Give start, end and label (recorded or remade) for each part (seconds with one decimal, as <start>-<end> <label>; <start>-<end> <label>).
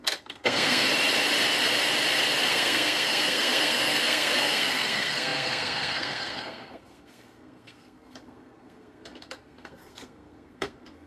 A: 0.0-0.8 remade; 0.8-2.5 recorded; 2.5-11.1 remade